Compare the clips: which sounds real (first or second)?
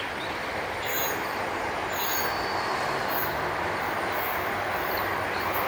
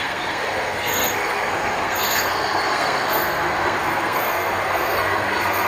first